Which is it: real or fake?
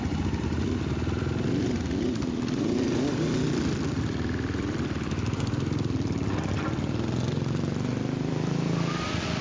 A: fake